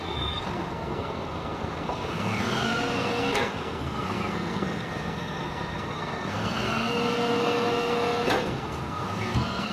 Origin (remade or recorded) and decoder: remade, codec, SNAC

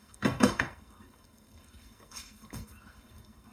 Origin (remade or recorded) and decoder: remade, codec, SNAC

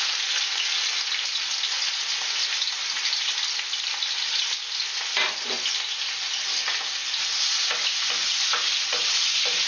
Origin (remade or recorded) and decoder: recorded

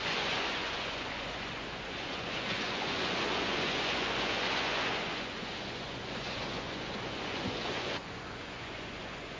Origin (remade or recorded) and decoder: remade, vocoder, Vocos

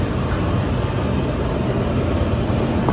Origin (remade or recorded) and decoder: recorded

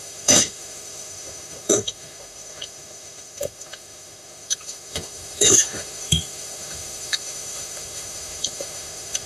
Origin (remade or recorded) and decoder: remade, autoencoder, DAC-VAE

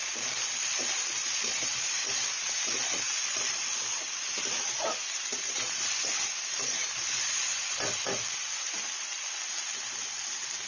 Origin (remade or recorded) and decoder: recorded